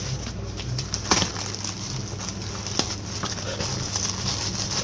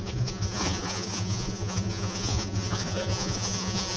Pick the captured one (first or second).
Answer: first